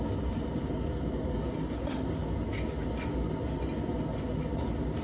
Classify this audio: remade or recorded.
recorded